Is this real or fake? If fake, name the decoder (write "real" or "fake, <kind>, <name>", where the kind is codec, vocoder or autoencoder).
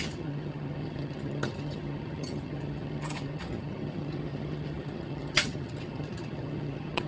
fake, vocoder, HiFi-GAN